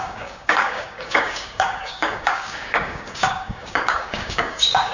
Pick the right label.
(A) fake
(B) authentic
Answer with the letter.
A